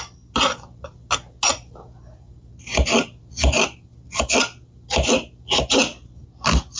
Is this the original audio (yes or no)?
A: yes